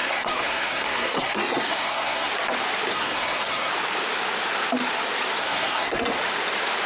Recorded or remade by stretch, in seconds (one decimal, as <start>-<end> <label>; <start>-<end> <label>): 0.0-2.3 remade; 2.3-2.9 recorded; 2.9-3.7 remade; 3.7-5.4 recorded; 5.4-6.2 remade; 6.2-6.9 recorded